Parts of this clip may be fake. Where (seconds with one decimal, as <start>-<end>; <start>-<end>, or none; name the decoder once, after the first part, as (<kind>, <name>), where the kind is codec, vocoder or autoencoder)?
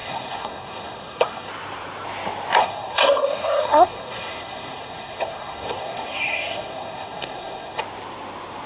0.0-1.5 (codec, SNAC); 2.6-7.8